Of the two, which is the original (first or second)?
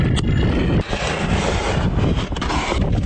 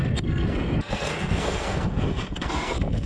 first